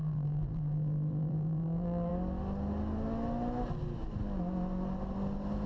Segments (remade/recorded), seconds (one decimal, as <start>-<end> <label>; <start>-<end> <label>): 0.0-2.1 remade; 2.1-5.7 recorded